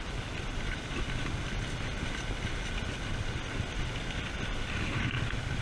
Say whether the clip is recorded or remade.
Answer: recorded